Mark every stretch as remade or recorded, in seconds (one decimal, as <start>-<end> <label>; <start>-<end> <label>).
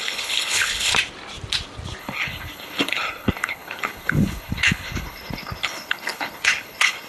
0.0-0.9 remade; 0.9-2.0 recorded; 2.0-7.1 remade